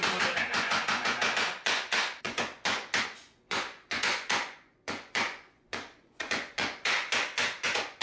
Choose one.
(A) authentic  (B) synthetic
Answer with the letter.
B